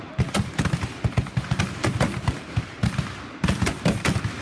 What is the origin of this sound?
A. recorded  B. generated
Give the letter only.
A